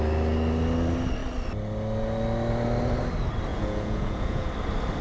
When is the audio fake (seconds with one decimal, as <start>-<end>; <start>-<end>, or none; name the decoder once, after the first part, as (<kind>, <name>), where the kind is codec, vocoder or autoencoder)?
3.5-4.5 (vocoder, Vocos)